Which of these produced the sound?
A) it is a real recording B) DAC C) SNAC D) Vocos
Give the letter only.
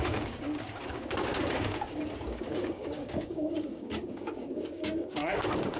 B